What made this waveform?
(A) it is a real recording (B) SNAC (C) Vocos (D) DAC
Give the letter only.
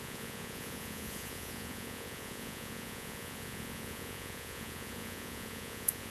C